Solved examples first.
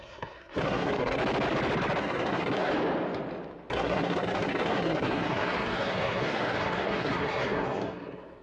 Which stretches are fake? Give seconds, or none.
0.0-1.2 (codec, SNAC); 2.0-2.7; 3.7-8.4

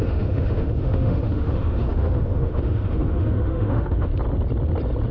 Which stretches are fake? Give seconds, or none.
0.0-4.1 (autoencoder, DAC-VAE)

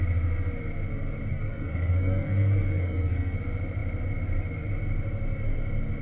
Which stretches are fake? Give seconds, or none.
1.3-3.4 (codec, SNAC)

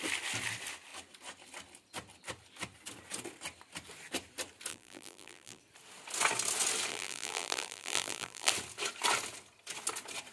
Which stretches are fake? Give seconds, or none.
4.7-5.6 (vocoder, BigVGAN v2); 6.9-8.5

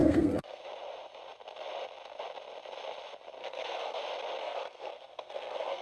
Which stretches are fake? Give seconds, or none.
0.0-0.6 (codec, SNAC); 3.4-4.0; 4.4-5.8

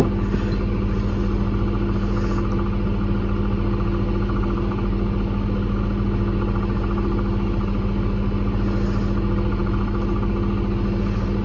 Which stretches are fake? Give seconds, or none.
none

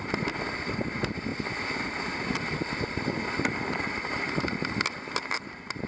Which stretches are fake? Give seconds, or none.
none

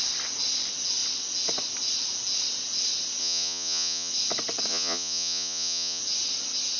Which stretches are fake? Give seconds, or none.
3.2-4.1 (vocoder, Vocos); 4.7-6.0